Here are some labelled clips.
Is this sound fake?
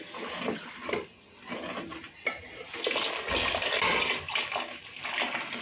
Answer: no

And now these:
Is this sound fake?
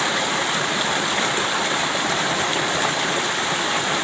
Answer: no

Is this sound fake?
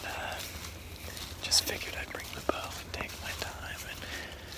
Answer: no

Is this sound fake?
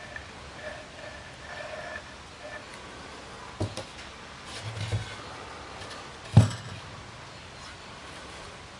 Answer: no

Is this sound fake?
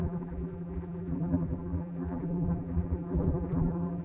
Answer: yes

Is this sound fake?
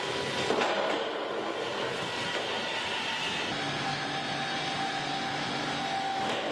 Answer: no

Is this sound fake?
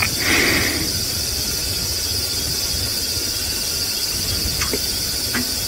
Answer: yes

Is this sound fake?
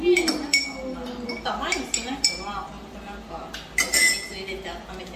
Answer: no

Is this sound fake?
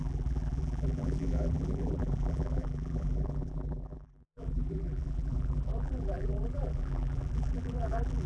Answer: yes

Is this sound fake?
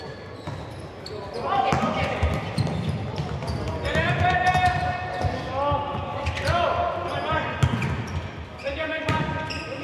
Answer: no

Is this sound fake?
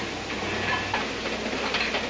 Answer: no